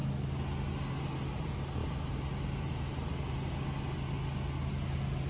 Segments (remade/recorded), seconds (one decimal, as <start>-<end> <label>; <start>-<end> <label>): 0.0-5.3 recorded

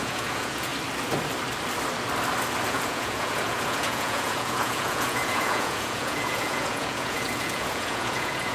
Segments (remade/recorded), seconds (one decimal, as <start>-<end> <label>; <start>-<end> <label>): 0.0-0.7 remade; 0.7-2.7 recorded; 2.7-8.5 remade

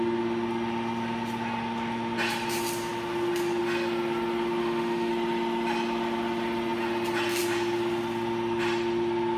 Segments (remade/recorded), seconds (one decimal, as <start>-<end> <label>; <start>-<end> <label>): 0.0-4.6 recorded; 4.6-5.1 remade; 5.1-9.4 recorded

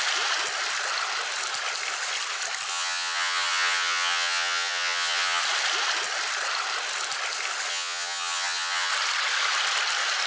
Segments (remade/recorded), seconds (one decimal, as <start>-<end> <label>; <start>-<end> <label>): 0.0-2.7 recorded; 2.7-5.4 remade; 5.4-7.7 recorded; 7.7-8.9 remade; 8.9-10.3 recorded

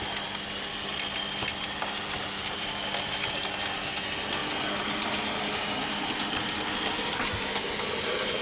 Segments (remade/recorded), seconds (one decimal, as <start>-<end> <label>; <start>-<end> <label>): 0.0-8.4 recorded

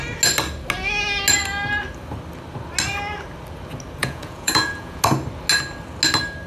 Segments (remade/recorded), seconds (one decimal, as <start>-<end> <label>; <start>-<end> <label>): 0.0-4.0 recorded; 4.0-5.0 remade; 5.0-6.5 recorded